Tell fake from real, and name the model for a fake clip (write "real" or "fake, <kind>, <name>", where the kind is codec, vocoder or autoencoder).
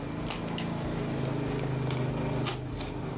real